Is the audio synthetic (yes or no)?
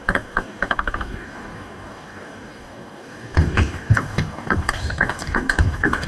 yes